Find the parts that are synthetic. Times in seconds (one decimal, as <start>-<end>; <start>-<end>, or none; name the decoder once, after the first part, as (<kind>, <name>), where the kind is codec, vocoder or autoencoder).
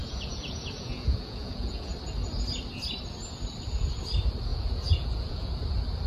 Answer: 0.0-1.9 (vocoder, Vocos); 4.5-5.5